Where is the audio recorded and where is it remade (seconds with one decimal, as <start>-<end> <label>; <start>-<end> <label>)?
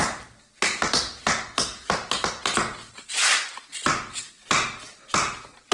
0.0-5.7 recorded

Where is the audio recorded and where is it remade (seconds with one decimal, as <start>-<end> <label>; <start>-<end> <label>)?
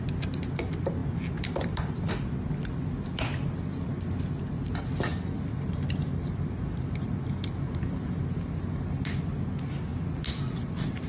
0.0-1.0 recorded; 1.0-2.1 remade; 2.1-5.1 recorded; 5.1-8.2 remade; 8.2-11.1 recorded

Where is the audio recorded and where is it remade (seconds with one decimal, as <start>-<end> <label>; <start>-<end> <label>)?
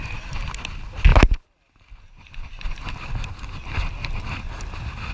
0.0-5.1 recorded